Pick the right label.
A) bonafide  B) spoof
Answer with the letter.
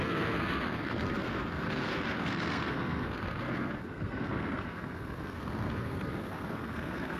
B